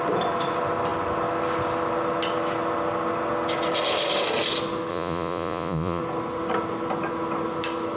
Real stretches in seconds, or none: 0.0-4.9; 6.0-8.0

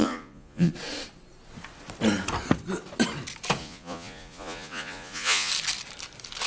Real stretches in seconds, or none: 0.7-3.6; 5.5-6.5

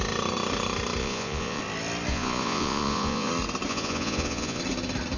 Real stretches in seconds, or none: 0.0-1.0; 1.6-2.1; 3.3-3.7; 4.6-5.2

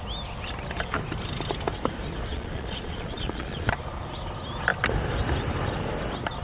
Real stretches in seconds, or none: 0.0-2.3; 3.7-6.4

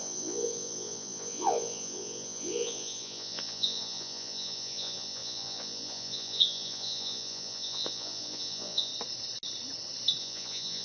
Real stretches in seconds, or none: 8.9-10.2